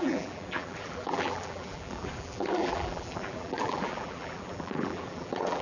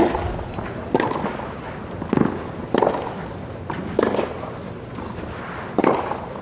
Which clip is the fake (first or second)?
first